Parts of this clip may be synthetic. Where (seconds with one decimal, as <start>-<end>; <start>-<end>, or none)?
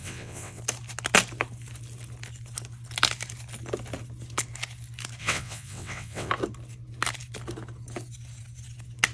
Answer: 0.0-0.6; 5.2-6.3